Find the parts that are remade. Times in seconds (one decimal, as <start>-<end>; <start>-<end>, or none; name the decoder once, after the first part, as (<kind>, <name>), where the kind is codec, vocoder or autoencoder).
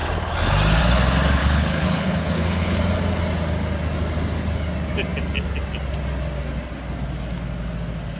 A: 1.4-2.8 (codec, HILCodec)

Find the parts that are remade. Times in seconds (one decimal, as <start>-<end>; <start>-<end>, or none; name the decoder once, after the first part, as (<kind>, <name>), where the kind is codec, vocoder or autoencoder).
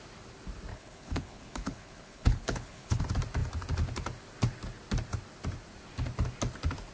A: 0.7-3.0 (codec, HILCodec)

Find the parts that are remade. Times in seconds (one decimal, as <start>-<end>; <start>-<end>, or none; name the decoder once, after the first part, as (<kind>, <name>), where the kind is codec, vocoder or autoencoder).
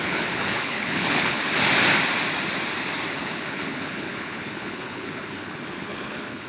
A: 0.0-1.4 (codec, HILCodec); 3.2-6.5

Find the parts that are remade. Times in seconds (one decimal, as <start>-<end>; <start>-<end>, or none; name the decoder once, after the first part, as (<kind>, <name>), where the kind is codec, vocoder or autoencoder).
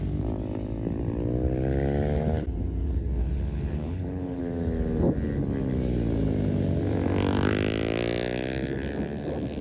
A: 3.2-4.4 (codec, HILCodec)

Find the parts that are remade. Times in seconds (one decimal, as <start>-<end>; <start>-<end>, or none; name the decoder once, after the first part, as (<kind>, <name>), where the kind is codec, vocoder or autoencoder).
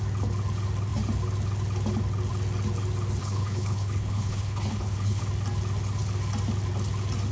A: 3.2-5.2 (codec, HILCodec)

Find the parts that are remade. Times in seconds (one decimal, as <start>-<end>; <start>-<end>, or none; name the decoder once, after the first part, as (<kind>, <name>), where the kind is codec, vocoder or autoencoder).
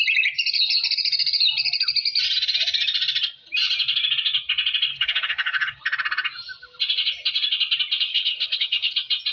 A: 4.9-5.8 (codec, HILCodec); 8.1-8.9